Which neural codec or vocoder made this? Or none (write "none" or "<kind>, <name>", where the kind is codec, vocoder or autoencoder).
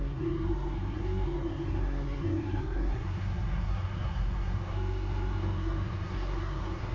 codec, SNAC